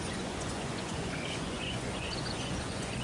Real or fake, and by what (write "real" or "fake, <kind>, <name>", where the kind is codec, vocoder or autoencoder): fake, vocoder, Vocos